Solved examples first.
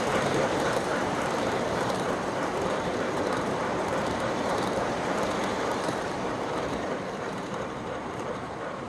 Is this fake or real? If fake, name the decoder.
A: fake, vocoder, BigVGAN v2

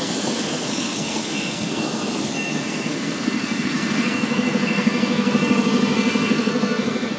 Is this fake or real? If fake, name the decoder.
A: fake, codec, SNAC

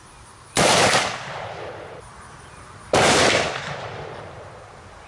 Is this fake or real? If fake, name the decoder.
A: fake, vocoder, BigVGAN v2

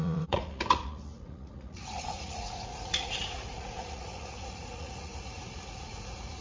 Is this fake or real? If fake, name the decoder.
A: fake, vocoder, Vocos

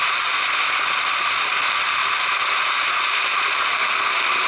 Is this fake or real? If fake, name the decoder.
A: real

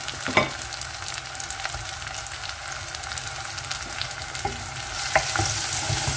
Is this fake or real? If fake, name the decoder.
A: real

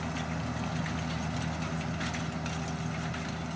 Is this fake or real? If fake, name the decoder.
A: real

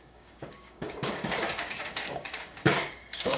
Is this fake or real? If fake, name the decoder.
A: fake, codec, DAC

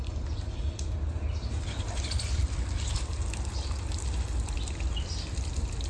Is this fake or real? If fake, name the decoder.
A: real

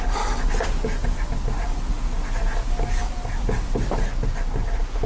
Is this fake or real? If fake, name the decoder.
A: real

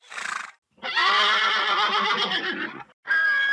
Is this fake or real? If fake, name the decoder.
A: real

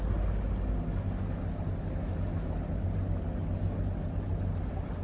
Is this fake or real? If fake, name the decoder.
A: real